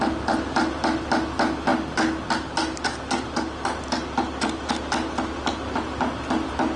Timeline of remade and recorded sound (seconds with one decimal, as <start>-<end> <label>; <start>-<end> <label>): 0.0-6.8 recorded